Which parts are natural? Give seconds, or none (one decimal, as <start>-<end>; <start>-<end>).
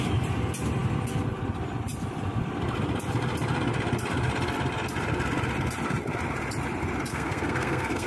0.0-7.1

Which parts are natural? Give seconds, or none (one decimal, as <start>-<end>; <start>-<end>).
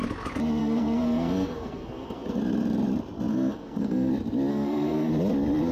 0.0-0.6; 2.4-3.3; 4.1-4.5; 5.1-5.7